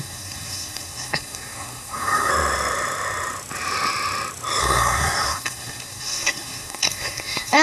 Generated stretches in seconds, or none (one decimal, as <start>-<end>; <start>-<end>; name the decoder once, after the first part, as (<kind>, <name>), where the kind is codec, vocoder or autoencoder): 0.0-2.3 (codec, SNAC); 4.6-7.6